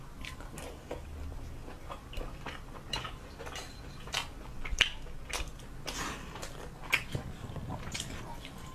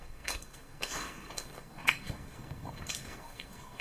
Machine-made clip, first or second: second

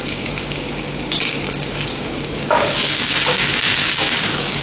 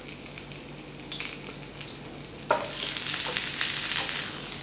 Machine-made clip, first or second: first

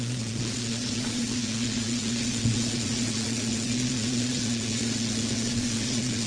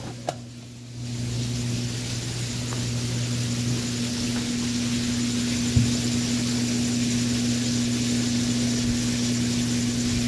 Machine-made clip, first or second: first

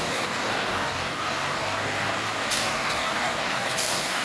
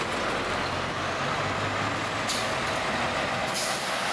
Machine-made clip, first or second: first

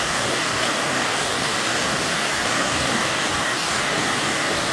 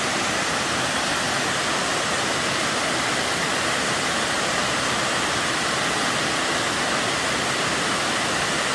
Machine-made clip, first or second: first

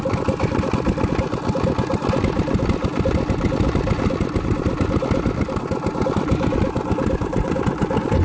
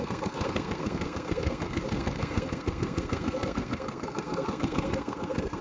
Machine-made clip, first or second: second